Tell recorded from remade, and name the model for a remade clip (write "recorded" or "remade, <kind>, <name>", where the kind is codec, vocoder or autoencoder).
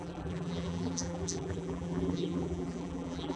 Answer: remade, vocoder, BigVGAN v2